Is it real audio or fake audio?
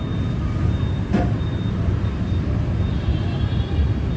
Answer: real